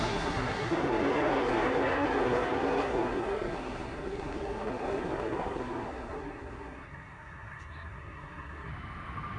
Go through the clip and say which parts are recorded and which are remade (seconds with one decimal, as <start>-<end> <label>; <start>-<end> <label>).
0.0-8.7 remade; 8.7-9.4 recorded